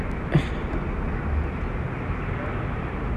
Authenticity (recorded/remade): recorded